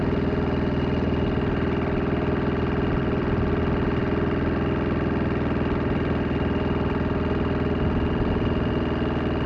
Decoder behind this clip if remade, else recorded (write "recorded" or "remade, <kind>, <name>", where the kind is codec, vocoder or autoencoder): recorded